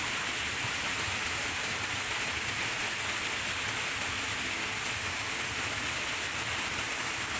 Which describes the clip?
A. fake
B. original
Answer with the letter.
B